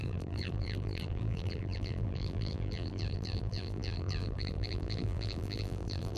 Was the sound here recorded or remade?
remade